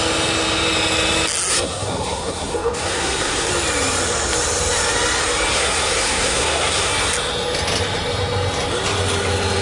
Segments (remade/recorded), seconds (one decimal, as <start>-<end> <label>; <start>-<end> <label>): 0.0-1.5 recorded; 1.5-3.5 remade; 3.5-5.5 recorded; 5.5-6.9 remade; 6.9-9.6 recorded